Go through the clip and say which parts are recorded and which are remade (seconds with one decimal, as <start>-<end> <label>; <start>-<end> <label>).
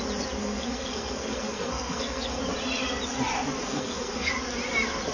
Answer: 0.0-0.4 recorded; 0.4-2.4 remade; 2.4-3.6 recorded; 3.6-4.3 remade; 4.3-5.1 recorded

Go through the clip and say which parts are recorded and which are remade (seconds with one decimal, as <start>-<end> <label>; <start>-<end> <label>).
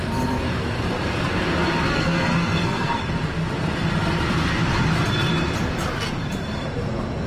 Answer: 0.0-1.9 recorded; 1.9-3.0 remade; 3.0-7.3 recorded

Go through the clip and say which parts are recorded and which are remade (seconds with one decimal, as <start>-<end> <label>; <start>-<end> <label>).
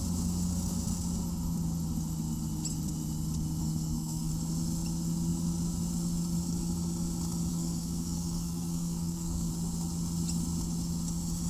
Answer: 0.0-3.6 recorded; 3.6-4.3 remade; 4.3-7.5 recorded; 7.5-9.5 remade; 9.5-11.5 recorded